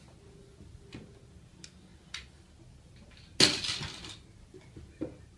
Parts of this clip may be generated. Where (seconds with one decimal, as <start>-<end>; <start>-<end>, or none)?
none